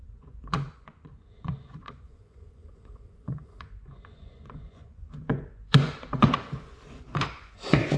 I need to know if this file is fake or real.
fake